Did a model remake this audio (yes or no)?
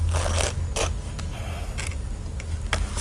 no